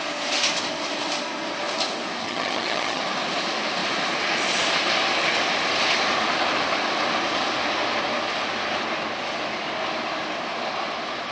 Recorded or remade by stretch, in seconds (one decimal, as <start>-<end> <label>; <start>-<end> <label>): 0.0-2.2 recorded; 2.2-3.0 remade; 3.0-11.3 recorded